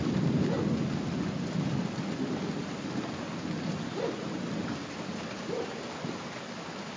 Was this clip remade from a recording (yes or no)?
no